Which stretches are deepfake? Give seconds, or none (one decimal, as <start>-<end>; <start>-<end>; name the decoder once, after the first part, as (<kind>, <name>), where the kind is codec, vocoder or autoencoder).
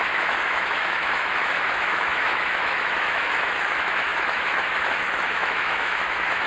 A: 0.0-6.5 (autoencoder, DAC-VAE)